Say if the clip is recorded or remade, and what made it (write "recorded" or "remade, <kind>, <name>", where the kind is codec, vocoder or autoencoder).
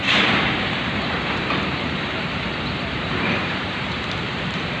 remade, vocoder, BigVGAN v2